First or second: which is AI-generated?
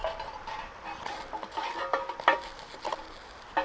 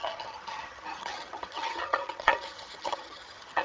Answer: second